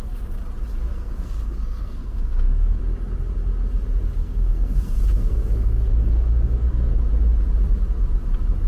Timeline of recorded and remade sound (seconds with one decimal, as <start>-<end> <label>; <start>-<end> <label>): 0.0-0.9 recorded; 0.9-2.8 remade; 2.8-4.2 recorded; 4.2-6.9 remade; 6.9-8.7 recorded